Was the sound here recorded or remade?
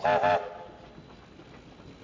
recorded